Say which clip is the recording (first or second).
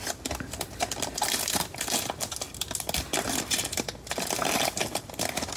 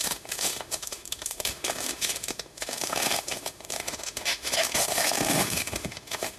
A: first